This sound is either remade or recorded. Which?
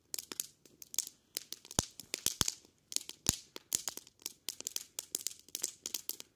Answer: recorded